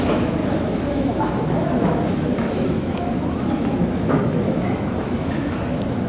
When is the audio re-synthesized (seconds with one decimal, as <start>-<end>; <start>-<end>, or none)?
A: 0.0-6.1